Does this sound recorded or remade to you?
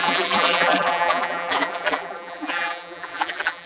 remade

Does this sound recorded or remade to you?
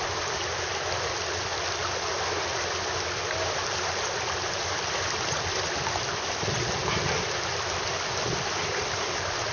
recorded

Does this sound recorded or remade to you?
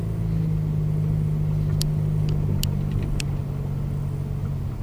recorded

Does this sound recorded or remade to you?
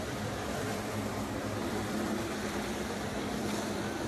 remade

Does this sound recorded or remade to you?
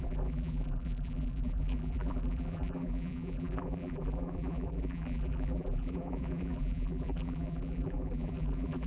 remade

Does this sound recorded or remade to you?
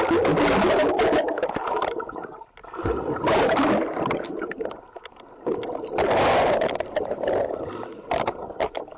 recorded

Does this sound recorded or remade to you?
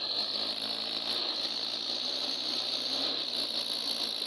recorded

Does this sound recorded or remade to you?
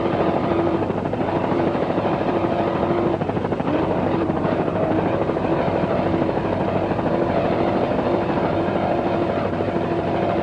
remade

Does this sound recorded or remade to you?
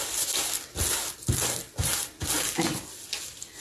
recorded